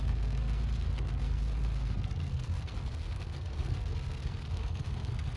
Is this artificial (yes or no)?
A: yes